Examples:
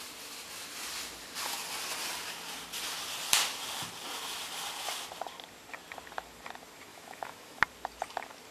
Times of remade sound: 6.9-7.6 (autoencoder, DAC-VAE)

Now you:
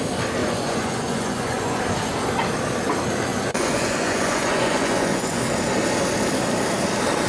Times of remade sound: 0.4-1.8 (vocoder, Vocos); 3.3-5.4

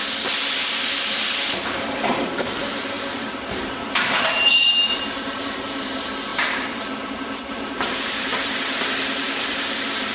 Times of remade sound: 1.7-10.1 (vocoder, BigVGAN v2)

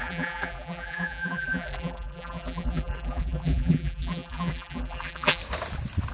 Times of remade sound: 0.0-5.4 (vocoder, BigVGAN v2)

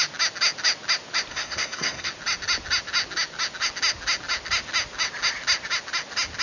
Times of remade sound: 1.3-2.1 (codec, SNAC)

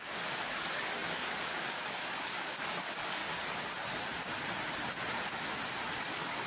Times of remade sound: 0.0-3.2 (codec, DAC); 6.0-6.5

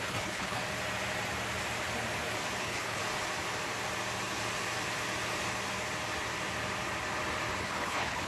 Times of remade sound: 0.0-0.6 (codec, HILCodec); 2.6-3.0; 7.6-8.3

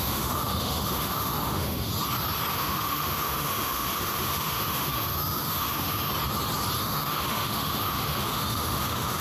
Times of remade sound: 0.0-1.9 (autoencoder, DAC-VAE); 2.5-6.1; 6.8-9.2